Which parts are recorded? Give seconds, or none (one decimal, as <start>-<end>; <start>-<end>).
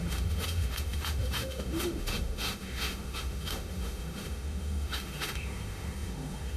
none